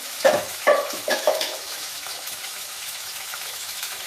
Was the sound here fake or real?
fake